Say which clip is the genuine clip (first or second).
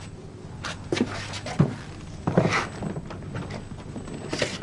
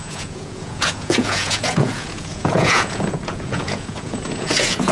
first